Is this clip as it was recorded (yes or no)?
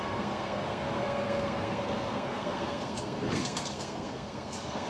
no